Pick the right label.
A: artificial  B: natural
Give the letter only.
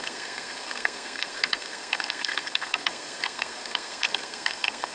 A